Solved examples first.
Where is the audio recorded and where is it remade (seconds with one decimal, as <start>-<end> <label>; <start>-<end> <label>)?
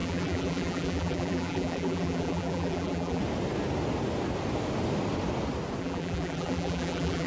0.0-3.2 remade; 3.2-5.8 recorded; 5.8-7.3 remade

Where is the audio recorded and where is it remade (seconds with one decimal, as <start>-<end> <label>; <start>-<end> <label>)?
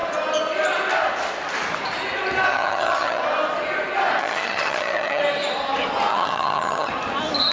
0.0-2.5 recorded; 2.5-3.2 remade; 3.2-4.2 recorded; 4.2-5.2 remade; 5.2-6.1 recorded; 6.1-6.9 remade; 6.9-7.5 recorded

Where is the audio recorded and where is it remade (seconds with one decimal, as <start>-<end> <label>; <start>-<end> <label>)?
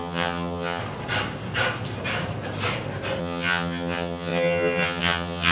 0.0-0.8 remade; 0.8-3.2 recorded; 3.2-5.5 remade